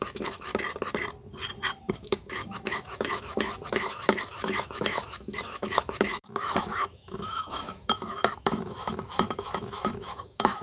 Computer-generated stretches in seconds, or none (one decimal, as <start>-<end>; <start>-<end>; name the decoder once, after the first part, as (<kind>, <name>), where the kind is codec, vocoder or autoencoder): 0.0-0.5 (autoencoder, DAC-VAE); 1.9-10.6